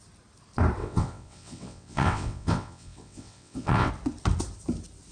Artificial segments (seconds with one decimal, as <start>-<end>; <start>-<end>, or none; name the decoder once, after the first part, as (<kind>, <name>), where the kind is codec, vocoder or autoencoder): 0.8-3.9 (vocoder, WaveNeXt)

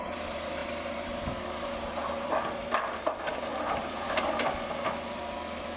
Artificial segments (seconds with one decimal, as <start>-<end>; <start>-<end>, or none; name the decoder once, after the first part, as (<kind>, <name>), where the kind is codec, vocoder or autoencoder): 0.0-5.8 (vocoder, BigVGAN v2)

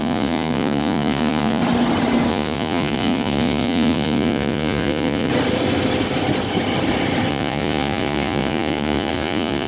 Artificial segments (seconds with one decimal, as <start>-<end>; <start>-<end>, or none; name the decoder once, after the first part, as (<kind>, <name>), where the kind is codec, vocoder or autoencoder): 0.0-1.6 (vocoder, Vocos); 2.3-5.3; 7.3-9.7